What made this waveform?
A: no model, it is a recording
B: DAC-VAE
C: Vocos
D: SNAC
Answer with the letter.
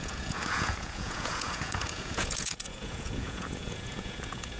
C